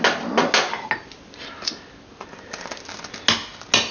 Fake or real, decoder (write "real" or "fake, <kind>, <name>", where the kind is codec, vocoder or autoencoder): real